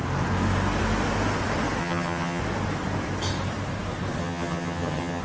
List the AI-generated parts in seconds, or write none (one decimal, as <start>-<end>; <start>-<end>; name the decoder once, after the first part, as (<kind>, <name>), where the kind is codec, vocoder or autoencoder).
1.8-2.4 (vocoder, HiFi-GAN); 4.2-5.2